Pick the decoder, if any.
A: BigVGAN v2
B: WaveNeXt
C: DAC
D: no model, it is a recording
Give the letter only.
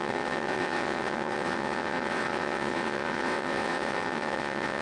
B